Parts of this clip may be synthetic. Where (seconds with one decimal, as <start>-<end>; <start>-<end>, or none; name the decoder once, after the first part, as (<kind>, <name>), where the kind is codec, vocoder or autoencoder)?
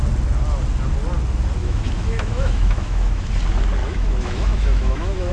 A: 1.6-3.3 (autoencoder, DAC-VAE); 3.8-5.3